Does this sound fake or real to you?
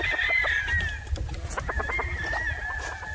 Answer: real